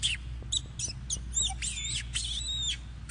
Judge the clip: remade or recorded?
recorded